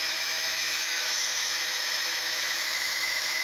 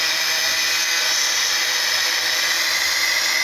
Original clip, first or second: second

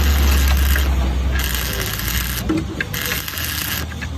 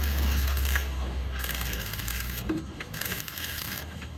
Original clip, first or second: first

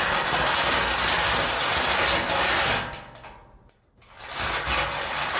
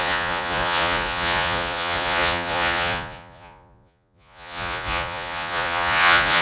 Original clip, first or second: first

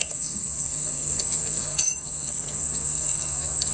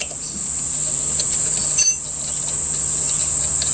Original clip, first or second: second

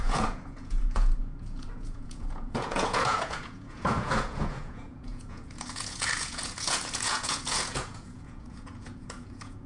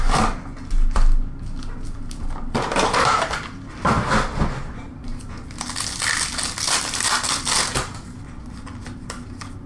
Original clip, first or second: second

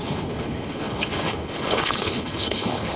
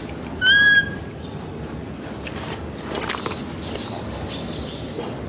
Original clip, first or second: second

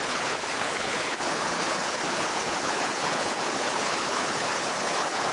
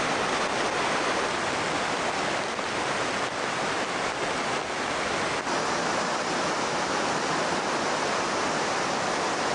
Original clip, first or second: second